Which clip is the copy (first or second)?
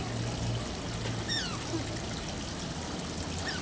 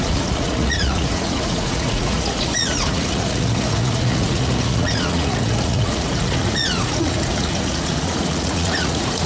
second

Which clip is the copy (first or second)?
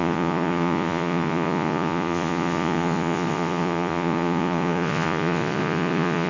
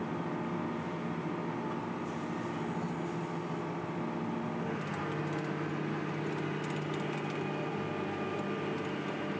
first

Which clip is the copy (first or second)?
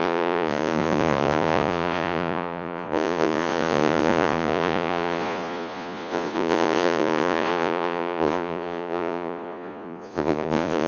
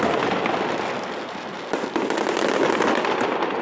first